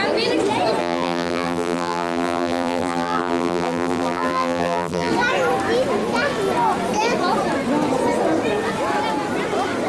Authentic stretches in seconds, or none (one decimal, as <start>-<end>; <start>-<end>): 0.0-0.8; 5.1-9.9